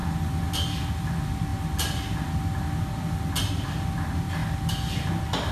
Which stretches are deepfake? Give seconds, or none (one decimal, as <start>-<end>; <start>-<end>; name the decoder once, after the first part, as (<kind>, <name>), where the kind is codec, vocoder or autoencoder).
none